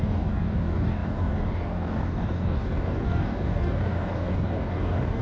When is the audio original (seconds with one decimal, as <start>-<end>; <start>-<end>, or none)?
none

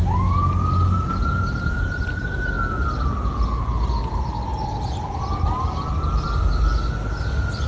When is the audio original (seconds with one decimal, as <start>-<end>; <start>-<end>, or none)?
0.0-7.7

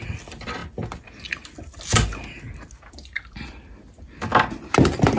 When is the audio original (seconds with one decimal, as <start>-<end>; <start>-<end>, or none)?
0.0-5.2

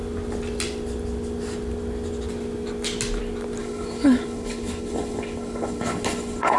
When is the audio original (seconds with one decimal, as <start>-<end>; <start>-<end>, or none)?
0.0-3.6

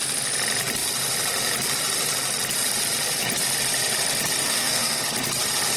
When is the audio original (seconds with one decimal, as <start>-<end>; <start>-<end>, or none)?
0.0-4.4; 5.0-5.8

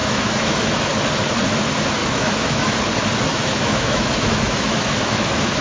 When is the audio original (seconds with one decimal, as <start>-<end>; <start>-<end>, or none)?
0.7-2.0; 2.8-3.3

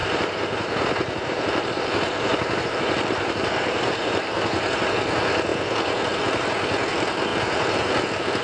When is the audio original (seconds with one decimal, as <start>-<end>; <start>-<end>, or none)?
4.8-8.4

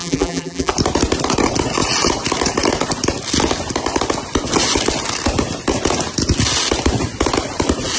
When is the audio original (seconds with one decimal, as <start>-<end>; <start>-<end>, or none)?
0.7-8.0